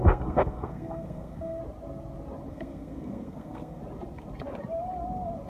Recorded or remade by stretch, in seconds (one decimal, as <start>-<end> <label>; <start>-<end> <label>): 0.0-1.6 remade; 1.6-2.5 recorded; 2.5-3.8 remade; 3.8-5.5 recorded